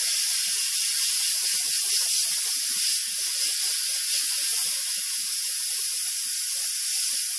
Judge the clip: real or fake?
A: real